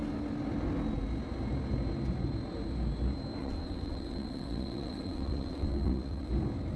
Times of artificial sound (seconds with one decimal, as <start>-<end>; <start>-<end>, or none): 3.4-6.3